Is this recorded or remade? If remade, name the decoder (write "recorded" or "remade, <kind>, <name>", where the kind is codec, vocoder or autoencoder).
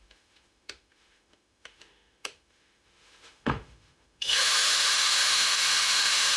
remade, autoencoder, DAC-VAE